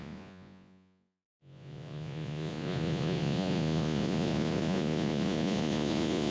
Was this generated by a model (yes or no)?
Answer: yes